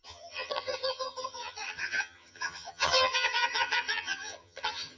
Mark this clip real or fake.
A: fake